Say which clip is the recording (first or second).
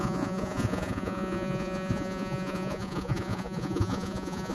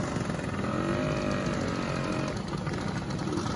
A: second